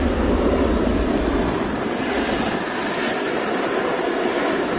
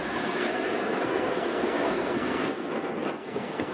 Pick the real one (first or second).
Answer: first